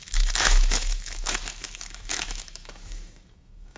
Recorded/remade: remade